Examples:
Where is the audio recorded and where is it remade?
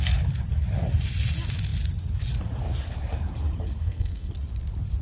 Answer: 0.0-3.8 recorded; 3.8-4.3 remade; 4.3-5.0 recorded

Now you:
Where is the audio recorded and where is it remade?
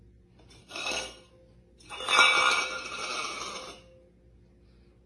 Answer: 0.0-0.6 recorded; 0.6-1.3 remade; 1.3-5.1 recorded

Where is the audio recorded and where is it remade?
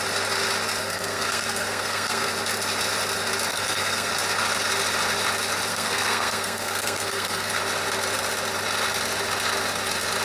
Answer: 0.0-0.8 recorded; 0.8-2.3 remade; 2.3-3.5 recorded; 3.5-4.1 remade; 4.1-5.7 recorded; 5.7-7.6 remade; 7.6-10.2 recorded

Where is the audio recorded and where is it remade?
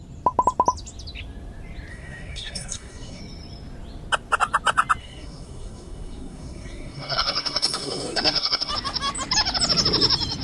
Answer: 0.0-1.9 recorded; 1.9-3.2 remade; 3.2-5.0 recorded; 5.0-8.7 remade; 8.7-10.4 recorded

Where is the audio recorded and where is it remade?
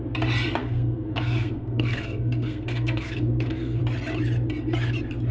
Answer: 0.0-0.6 recorded; 0.6-3.8 remade; 3.8-5.3 recorded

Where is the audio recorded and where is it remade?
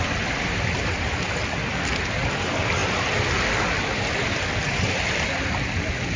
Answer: 0.0-6.2 recorded